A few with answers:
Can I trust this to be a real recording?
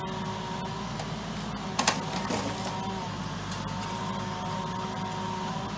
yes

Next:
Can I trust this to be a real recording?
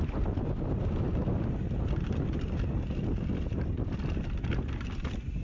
yes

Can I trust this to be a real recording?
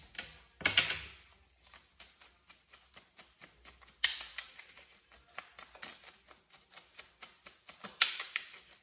yes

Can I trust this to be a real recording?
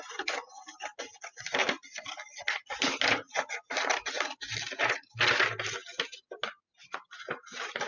yes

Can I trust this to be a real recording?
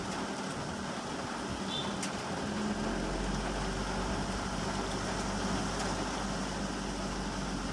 yes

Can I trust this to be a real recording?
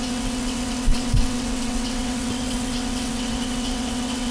no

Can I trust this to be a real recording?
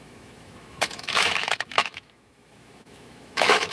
no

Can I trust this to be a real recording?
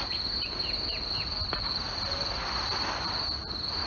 yes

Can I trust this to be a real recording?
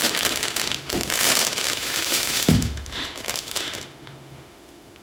no